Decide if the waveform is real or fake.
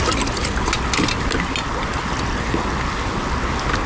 real